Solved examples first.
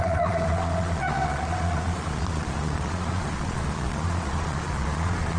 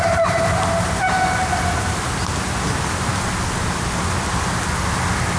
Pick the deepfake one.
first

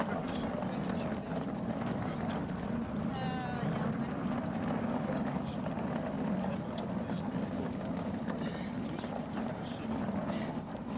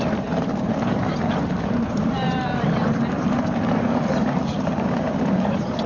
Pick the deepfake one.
second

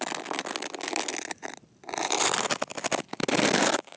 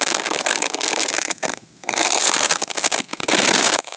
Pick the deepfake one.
second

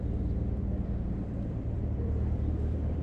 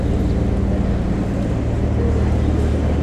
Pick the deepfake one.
first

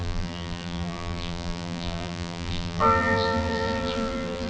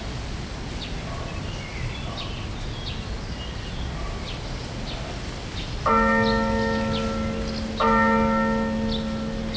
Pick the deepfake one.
first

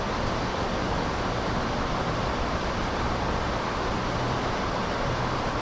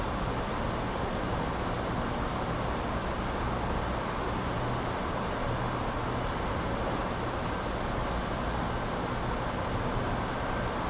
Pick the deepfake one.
first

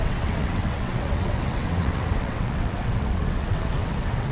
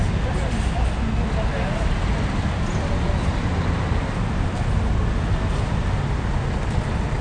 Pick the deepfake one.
first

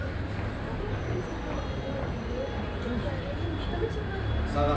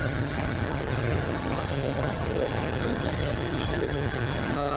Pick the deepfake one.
second